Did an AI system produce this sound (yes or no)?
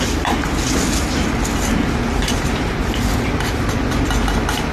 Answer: no